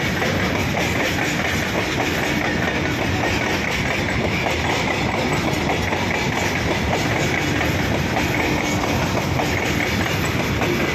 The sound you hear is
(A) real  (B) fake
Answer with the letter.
A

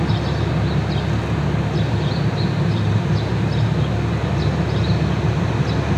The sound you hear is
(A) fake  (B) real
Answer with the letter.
B